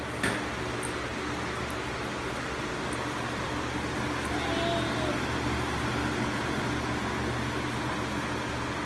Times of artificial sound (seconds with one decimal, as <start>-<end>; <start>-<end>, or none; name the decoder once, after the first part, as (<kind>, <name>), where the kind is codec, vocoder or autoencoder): none